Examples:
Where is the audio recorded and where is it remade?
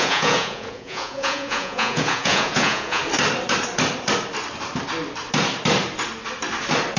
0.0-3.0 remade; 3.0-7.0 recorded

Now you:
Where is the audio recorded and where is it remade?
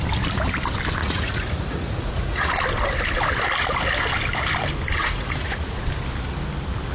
0.0-1.0 recorded; 1.0-2.5 remade; 2.5-5.0 recorded; 5.0-5.8 remade; 5.8-6.9 recorded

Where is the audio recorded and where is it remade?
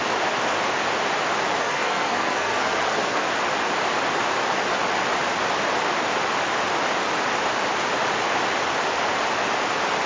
0.0-1.6 recorded; 1.6-3.3 remade; 3.3-10.1 recorded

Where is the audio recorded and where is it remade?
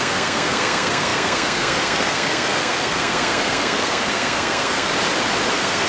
0.0-4.9 remade; 4.9-5.5 recorded; 5.5-5.9 remade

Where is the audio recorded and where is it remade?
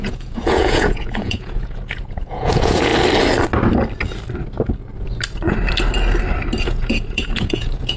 0.0-2.9 remade; 2.9-6.6 recorded; 6.6-8.0 remade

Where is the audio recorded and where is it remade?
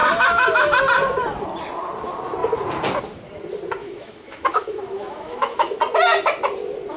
0.0-0.8 remade; 0.8-3.8 recorded; 3.8-5.8 remade; 5.8-7.0 recorded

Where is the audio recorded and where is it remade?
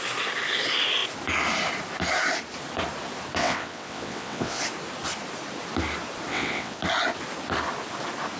0.0-3.4 recorded; 3.4-4.6 remade; 4.6-6.3 recorded; 6.3-6.8 remade; 6.8-8.4 recorded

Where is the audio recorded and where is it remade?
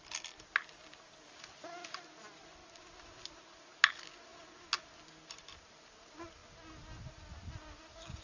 0.0-8.2 recorded